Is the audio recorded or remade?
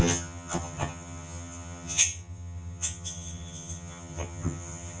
remade